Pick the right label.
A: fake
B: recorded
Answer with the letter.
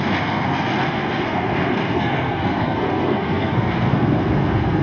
A